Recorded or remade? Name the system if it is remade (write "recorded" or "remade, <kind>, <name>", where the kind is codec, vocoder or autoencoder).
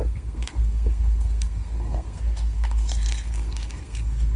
remade, codec, SNAC